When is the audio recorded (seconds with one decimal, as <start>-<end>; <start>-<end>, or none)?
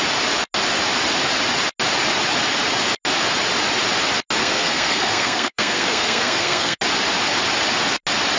0.0-4.4; 6.8-8.4